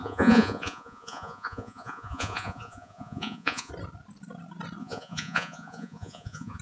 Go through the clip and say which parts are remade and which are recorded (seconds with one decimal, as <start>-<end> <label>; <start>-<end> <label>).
0.0-3.7 remade; 3.7-4.8 recorded; 4.8-6.6 remade

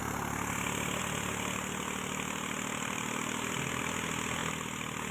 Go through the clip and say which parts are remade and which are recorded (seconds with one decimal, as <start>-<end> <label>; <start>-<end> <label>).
0.0-5.1 recorded

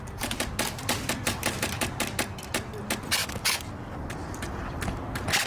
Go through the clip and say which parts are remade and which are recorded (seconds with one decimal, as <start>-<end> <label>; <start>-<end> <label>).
0.0-3.2 recorded; 3.2-3.7 remade; 3.7-5.5 recorded